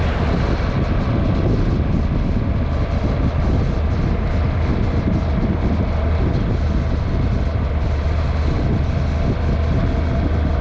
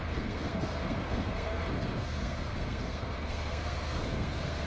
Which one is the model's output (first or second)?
second